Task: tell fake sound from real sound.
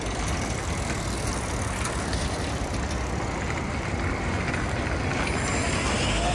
real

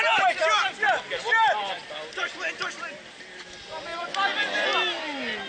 real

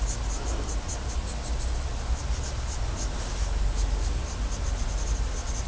real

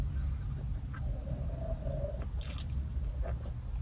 real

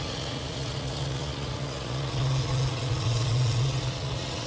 fake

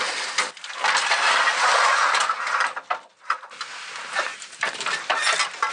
real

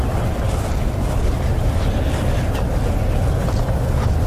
real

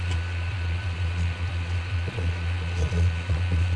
fake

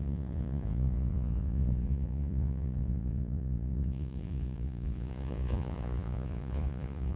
fake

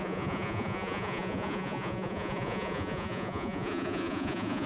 fake